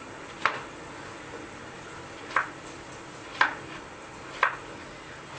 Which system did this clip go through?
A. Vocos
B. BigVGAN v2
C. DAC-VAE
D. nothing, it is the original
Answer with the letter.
D